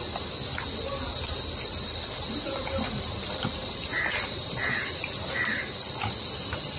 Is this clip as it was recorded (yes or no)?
yes